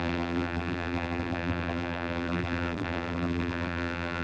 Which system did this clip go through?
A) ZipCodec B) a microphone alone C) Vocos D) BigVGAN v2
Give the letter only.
D